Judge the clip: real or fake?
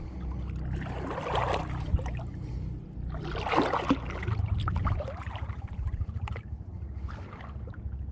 real